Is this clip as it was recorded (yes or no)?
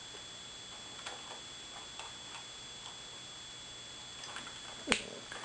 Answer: yes